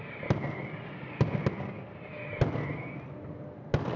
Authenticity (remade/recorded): recorded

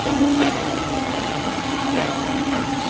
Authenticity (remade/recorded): remade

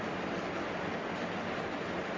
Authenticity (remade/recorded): recorded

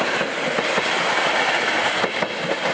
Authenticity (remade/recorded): recorded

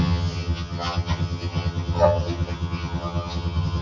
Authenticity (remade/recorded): remade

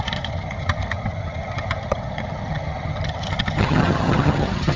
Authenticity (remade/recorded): remade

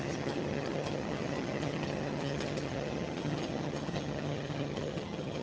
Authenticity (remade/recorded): remade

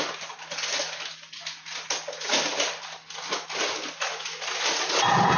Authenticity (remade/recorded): recorded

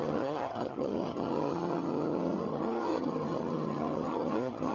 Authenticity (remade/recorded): remade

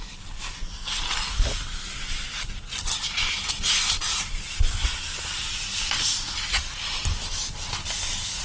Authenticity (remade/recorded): recorded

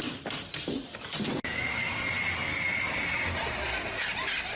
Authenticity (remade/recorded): recorded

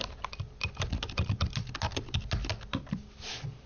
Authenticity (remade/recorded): recorded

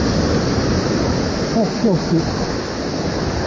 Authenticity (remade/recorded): recorded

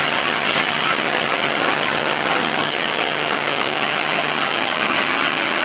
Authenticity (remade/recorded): remade